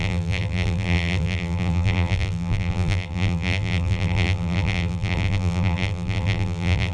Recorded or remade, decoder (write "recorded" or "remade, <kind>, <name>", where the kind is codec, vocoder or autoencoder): remade, vocoder, BigVGAN v2